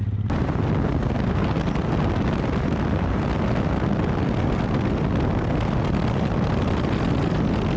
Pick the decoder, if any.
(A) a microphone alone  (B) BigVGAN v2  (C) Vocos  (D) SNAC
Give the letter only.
A